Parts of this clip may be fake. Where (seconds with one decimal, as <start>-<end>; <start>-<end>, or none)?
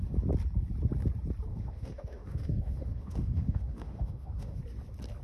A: 1.5-4.6